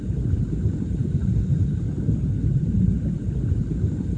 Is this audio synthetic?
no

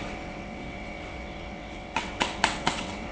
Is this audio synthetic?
yes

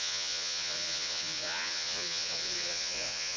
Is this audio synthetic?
yes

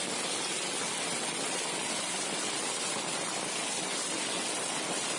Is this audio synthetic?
no